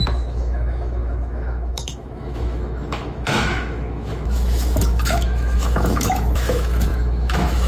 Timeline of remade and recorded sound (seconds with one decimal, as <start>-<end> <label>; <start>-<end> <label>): 0.0-7.7 remade